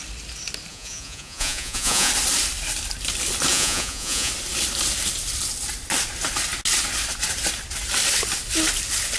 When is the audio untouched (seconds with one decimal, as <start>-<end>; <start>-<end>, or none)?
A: 0.0-0.7; 2.1-3.5; 4.3-9.2